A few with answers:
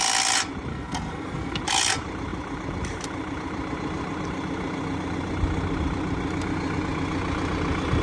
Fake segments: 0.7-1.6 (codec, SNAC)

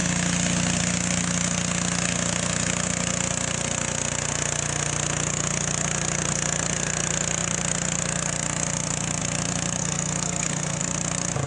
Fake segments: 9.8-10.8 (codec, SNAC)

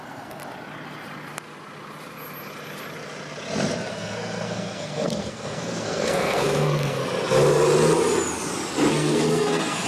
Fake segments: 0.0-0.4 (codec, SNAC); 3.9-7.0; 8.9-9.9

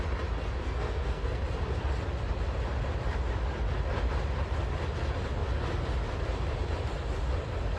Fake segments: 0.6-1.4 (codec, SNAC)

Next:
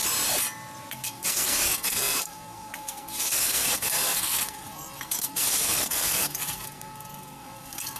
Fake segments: 0.9-8.0 (codec, SNAC)

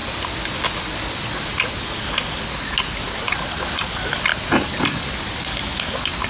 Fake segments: none

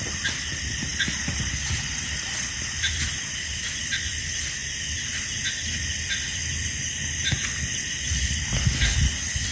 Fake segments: none